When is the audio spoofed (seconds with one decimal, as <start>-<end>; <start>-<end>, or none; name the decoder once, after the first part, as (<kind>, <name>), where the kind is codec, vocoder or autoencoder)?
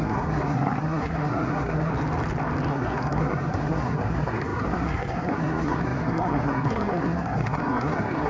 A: 0.0-1.9 (codec, SNAC); 2.7-8.3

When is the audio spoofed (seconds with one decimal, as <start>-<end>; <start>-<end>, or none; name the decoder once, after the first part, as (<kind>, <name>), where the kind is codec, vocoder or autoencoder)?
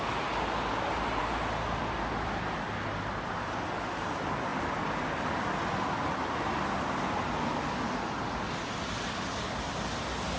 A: none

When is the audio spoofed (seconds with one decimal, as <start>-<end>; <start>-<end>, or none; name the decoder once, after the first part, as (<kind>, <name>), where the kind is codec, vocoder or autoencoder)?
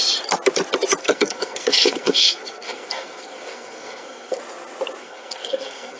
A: 1.0-4.4 (codec, SNAC); 5.0-6.0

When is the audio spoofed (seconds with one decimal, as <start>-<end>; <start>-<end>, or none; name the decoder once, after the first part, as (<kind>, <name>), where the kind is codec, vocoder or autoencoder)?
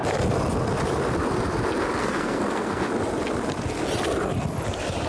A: 2.0-2.9 (codec, SNAC)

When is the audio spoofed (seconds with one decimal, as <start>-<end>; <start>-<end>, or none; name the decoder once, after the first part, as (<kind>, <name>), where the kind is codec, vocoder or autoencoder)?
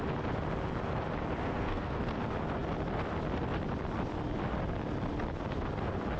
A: 1.4-2.0 (codec, SNAC)